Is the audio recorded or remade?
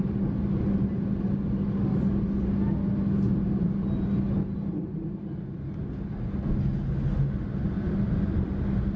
recorded